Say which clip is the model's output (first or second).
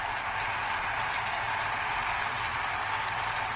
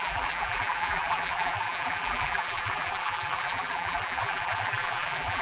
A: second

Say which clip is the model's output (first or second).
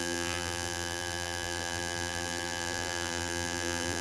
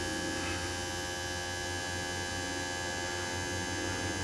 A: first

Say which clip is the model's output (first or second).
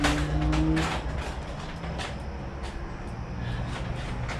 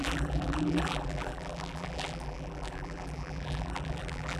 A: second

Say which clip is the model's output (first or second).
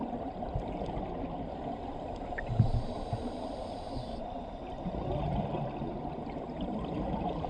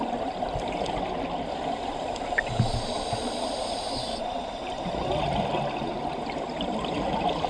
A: first